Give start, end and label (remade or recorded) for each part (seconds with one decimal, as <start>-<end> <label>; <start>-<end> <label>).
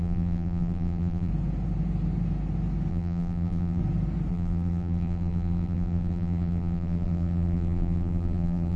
0.0-1.3 remade; 1.3-2.9 recorded; 2.9-3.8 remade; 3.8-4.3 recorded; 4.3-8.8 remade